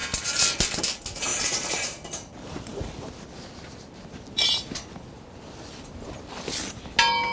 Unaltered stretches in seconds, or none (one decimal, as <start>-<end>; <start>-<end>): 0.0-1.3; 2.3-7.3